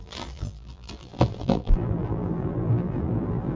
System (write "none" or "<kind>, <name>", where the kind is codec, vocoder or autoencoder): vocoder, BigVGAN v2